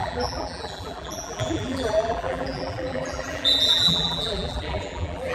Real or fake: fake